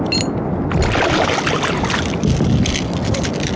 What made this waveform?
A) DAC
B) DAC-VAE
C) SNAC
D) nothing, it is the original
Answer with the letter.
D